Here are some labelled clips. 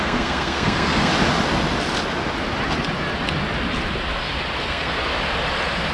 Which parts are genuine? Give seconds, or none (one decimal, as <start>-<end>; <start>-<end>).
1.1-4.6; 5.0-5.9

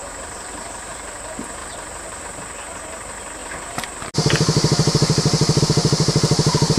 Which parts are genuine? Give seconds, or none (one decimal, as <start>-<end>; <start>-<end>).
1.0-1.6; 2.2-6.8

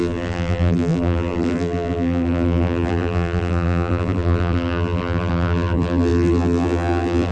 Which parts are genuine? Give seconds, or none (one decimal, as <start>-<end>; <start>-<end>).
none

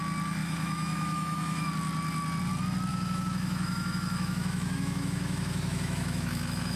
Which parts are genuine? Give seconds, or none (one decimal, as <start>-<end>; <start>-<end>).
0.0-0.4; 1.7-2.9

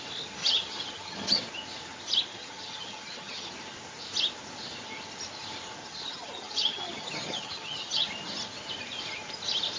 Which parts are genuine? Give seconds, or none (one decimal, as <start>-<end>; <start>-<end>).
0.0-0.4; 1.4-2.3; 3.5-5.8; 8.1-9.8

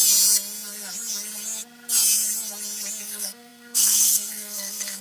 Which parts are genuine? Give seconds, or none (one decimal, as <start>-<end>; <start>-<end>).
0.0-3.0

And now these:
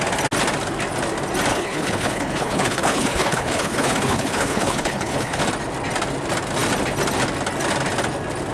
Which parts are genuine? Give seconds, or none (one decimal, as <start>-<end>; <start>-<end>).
0.0-1.5; 5.4-8.5